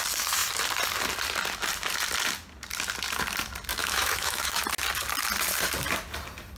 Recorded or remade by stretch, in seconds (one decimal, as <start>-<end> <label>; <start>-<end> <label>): 0.0-3.7 recorded; 3.7-4.6 remade; 4.6-6.6 recorded